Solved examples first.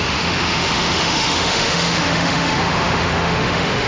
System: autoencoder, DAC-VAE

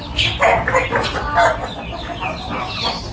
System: none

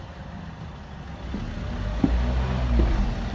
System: none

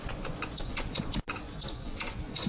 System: vocoder, Vocos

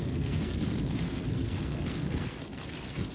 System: codec, SNAC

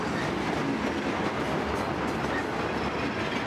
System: none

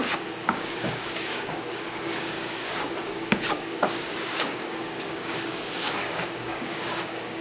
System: codec, DAC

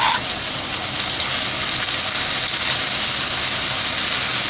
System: none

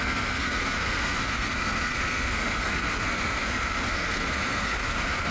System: codec, SNAC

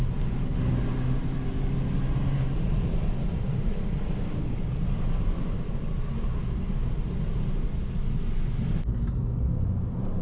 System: none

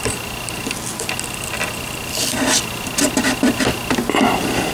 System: none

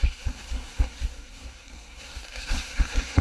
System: codec, SNAC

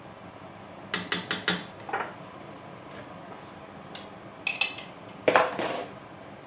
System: none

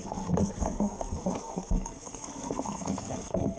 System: codec, SNAC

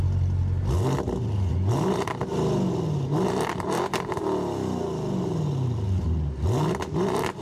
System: none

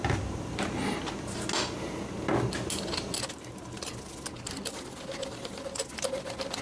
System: none